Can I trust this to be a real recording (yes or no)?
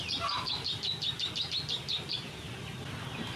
yes